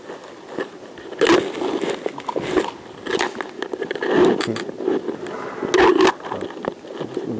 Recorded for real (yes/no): yes